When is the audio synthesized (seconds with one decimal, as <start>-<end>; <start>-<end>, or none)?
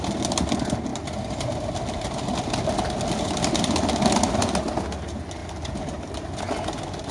none